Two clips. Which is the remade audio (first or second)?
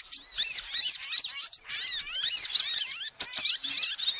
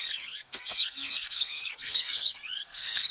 second